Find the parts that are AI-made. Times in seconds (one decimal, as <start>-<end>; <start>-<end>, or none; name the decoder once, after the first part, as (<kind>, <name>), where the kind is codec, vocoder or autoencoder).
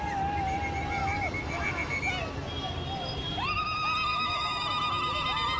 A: 1.0-2.0 (autoencoder, DAC-VAE); 4.1-4.6